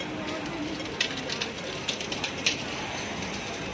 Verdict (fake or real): real